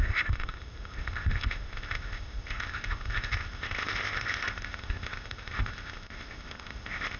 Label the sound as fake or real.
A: fake